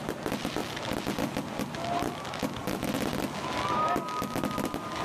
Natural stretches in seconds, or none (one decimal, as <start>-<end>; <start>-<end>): 0.0-5.0